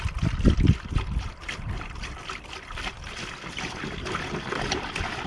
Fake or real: real